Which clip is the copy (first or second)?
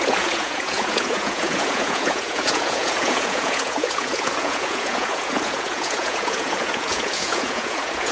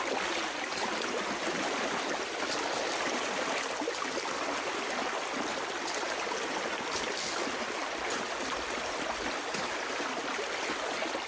first